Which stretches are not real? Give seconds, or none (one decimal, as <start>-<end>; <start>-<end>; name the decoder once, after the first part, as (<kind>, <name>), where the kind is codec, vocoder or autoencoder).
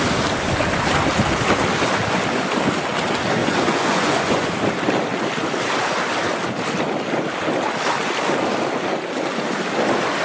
3.4-4.5 (vocoder, Vocos)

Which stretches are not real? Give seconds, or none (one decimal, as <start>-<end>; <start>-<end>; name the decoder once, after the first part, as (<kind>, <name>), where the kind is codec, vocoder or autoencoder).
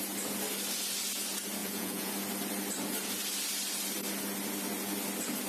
1.6-2.1 (vocoder, Vocos)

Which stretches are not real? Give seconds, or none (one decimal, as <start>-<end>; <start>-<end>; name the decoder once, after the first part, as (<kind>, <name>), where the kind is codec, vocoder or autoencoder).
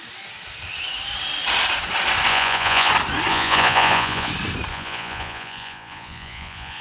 2.3-2.9 (vocoder, Vocos); 3.3-4.3; 4.7-6.8